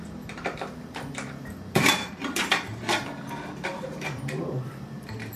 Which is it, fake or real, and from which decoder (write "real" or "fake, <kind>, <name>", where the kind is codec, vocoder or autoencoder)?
fake, vocoder, BigVGAN v2